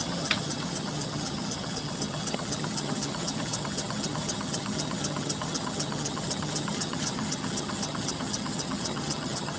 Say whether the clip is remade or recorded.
remade